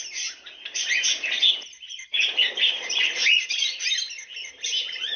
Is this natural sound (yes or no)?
yes